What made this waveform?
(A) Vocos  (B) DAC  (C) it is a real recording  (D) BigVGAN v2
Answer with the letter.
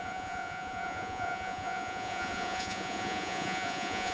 A